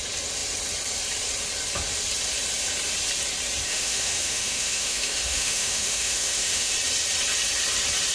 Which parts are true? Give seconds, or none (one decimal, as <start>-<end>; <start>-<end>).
0.0-3.7; 6.7-8.1